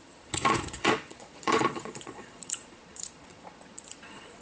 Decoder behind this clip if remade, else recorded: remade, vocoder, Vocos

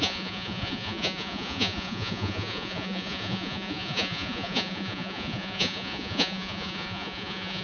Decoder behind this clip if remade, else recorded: remade, vocoder, Vocos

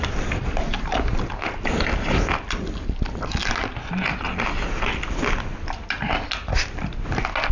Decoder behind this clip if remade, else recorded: recorded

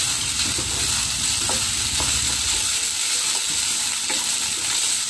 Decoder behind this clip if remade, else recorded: recorded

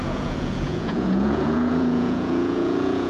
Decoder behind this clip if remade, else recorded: remade, vocoder, Vocos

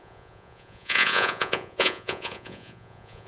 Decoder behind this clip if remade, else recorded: remade, vocoder, Vocos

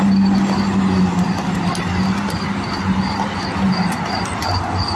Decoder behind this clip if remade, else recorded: recorded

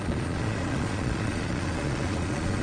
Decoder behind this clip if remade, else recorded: remade, vocoder, Vocos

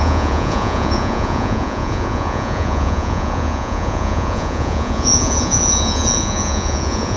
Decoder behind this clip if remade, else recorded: remade, vocoder, Vocos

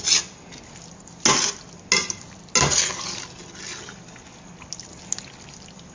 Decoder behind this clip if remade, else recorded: recorded